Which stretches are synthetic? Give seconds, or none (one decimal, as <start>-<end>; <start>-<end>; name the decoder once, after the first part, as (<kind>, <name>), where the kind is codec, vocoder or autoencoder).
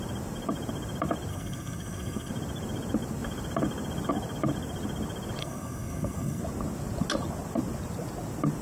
1.3-2.3 (codec, SNAC); 5.4-6.4